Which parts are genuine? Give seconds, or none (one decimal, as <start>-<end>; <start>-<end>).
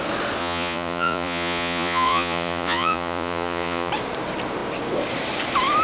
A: 0.0-0.4; 3.9-5.8